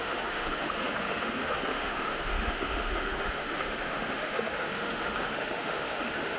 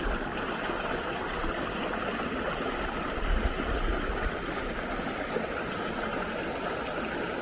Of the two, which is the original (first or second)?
second